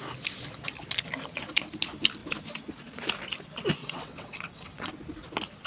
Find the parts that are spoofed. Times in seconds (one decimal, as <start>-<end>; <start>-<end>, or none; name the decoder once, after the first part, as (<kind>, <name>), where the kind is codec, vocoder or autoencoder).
3.8-4.9 (vocoder, WaveNeXt)